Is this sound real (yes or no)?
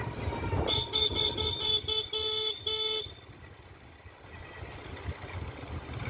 yes